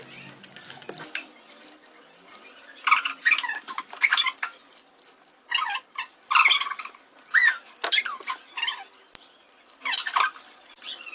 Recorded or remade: recorded